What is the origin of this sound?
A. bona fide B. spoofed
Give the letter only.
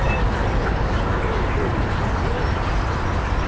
A